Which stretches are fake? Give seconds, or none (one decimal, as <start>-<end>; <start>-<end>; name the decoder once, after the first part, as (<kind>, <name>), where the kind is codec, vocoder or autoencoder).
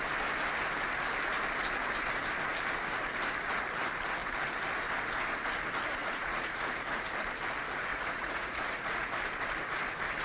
6.0-7.0 (vocoder, Vocos); 7.9-9.1